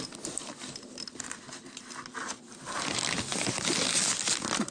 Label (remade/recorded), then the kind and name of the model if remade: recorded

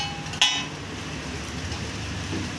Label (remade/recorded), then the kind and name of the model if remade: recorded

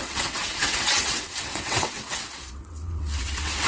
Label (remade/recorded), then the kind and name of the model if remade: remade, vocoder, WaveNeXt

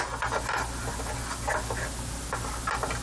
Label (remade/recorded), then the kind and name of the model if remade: recorded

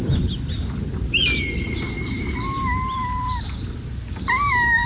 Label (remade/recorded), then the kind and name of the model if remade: recorded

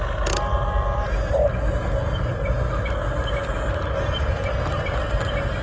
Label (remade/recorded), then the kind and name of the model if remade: recorded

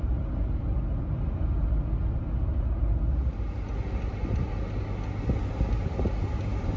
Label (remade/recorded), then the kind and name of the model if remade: recorded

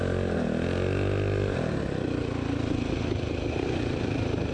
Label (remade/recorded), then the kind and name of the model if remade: recorded